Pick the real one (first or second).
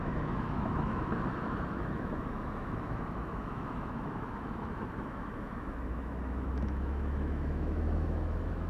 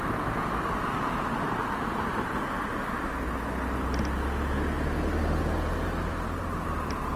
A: second